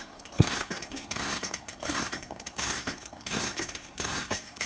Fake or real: fake